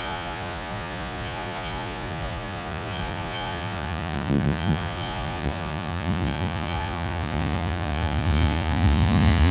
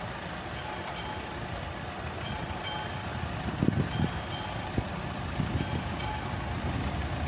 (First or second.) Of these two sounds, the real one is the second